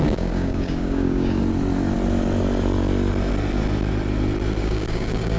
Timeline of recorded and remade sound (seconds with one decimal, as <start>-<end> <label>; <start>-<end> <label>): 0.0-1.4 remade; 1.4-4.6 recorded; 4.6-5.4 remade